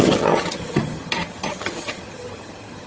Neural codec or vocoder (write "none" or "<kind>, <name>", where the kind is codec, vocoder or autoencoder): vocoder, HiFi-GAN